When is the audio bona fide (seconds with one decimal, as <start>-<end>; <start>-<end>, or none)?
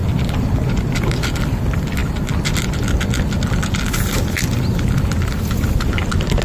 0.0-6.4